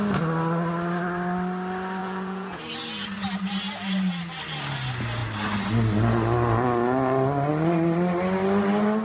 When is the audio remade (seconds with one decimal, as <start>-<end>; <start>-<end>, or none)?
2.0-2.6